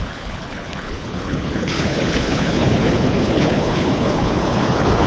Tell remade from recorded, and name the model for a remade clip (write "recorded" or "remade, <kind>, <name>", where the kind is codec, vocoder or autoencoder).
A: remade, codec, HILCodec